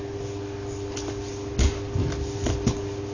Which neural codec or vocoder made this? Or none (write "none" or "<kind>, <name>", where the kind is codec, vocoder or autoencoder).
none